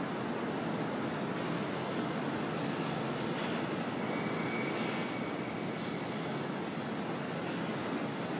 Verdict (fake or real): real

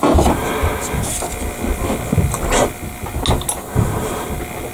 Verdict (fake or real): real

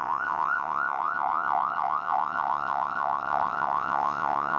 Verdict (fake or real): fake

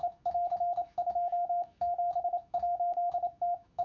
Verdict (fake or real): fake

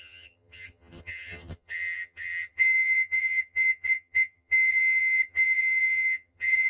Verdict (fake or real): fake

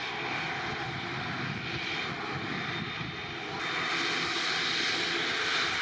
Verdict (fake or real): real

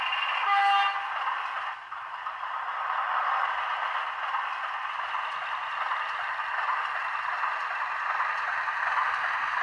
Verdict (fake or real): real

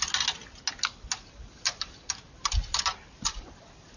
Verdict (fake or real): real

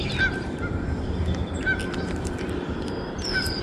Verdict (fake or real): fake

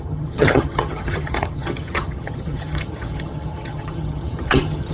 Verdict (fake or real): fake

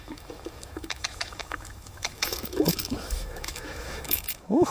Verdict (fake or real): fake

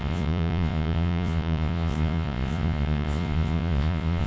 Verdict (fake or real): fake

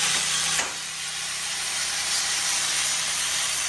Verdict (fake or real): fake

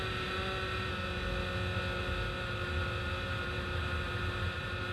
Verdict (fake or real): real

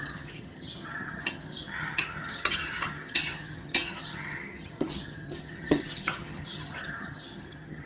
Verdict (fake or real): fake